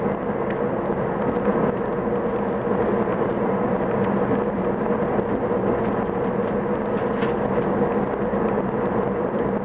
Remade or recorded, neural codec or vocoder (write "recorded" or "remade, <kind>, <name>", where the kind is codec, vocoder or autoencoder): recorded